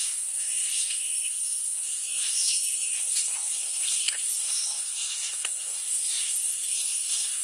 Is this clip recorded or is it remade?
remade